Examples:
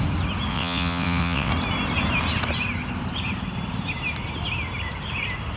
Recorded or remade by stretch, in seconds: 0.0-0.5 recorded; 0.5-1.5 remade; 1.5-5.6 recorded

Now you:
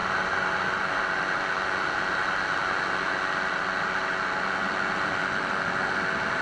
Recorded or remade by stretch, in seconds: 0.0-6.4 recorded

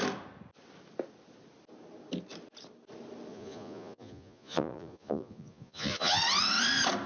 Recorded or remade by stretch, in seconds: 0.0-3.3 recorded; 3.3-6.2 remade; 6.2-7.1 recorded